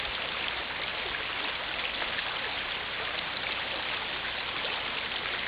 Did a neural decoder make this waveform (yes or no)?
no